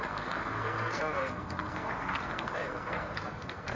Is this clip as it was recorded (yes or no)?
no